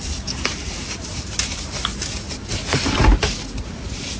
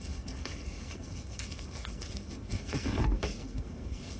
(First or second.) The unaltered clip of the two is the first